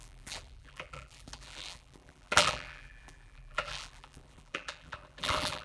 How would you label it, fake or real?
fake